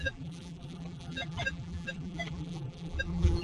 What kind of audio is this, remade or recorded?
remade